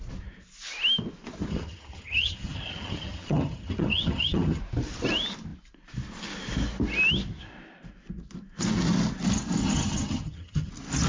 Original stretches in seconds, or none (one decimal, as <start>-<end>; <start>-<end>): 0.0-1.5; 4.6-9.6; 10.7-11.1